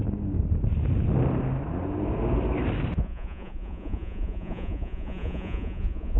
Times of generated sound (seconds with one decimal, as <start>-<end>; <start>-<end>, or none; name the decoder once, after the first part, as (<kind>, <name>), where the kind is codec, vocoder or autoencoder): 3.0-6.2 (vocoder, Vocos)